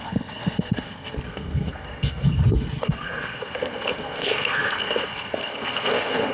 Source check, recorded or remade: remade